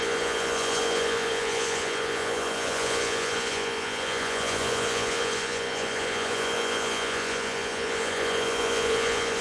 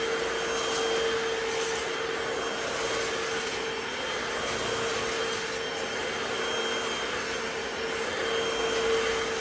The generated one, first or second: first